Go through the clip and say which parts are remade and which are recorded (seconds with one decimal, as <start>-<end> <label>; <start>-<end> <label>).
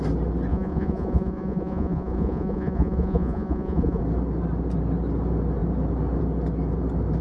0.0-0.5 recorded; 0.5-4.0 remade; 4.0-7.2 recorded